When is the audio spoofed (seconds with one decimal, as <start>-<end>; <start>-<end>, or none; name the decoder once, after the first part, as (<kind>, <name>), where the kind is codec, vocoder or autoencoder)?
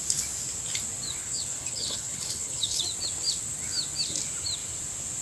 1.2-2.8 (codec, HILCodec)